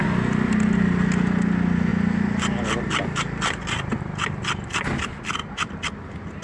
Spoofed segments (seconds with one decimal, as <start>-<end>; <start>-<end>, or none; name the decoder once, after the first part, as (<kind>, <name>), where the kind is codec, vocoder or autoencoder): none

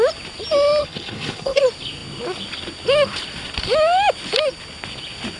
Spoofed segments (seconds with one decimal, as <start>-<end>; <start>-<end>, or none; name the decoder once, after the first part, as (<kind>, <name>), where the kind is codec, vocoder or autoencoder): 0.8-1.6 (codec, HILCodec)

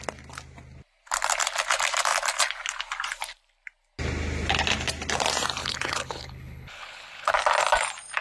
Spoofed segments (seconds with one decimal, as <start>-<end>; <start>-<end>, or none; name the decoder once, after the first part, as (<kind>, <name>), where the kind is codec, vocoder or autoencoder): 5.6-7.3 (codec, HILCodec)

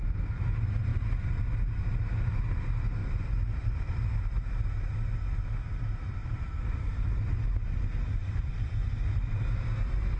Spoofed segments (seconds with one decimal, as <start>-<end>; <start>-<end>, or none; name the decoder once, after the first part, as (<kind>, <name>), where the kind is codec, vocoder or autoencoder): 3.0-4.0 (vocoder, BigVGAN v2); 6.2-7.1; 8.2-9.7

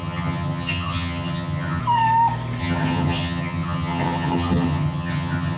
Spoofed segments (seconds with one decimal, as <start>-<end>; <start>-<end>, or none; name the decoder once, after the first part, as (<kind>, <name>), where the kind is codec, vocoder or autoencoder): 0.0-1.8 (vocoder, HiFi-GAN); 2.6-5.6

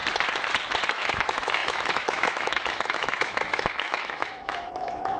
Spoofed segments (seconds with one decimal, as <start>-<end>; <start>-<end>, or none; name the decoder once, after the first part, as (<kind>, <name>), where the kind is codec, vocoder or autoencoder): 0.9-5.2 (autoencoder, DAC-VAE)

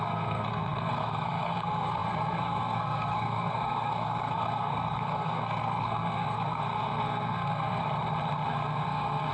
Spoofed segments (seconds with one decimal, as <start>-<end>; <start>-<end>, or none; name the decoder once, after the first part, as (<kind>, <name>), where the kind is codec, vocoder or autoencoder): 0.0-7.8 (codec, SNAC); 8.5-9.3

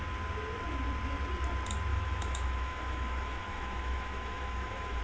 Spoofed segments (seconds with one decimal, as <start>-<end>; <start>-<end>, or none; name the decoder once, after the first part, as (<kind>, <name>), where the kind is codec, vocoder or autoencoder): 1.9-5.0 (autoencoder, DAC-VAE)